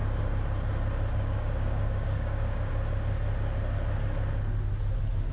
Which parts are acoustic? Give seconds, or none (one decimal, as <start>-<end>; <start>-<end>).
0.0-1.1; 2.7-5.3